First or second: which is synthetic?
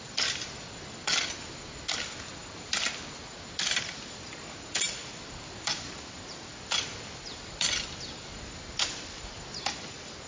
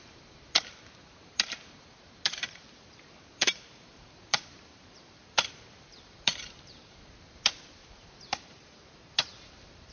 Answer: second